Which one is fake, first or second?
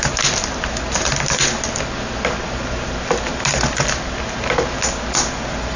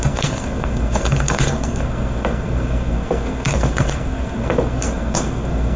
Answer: second